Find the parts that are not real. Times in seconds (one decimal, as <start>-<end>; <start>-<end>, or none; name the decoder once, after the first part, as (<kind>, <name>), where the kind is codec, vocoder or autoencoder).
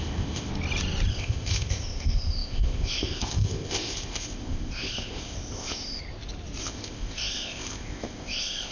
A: 0.0-0.5 (codec, ZipCodec); 1.1-6.0; 6.6-8.7